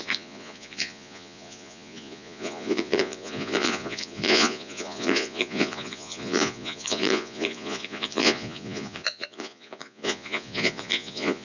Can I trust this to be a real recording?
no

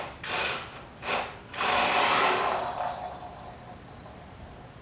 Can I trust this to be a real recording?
yes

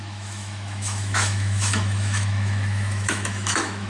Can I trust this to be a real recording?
no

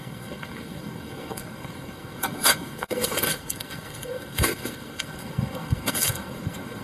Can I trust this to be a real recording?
no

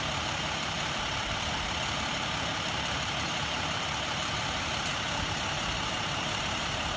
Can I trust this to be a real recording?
no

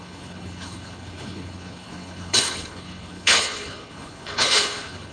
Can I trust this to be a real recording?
no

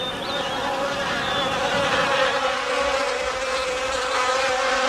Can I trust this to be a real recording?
yes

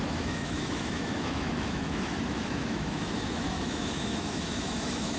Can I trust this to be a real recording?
no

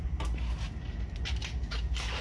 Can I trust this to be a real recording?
yes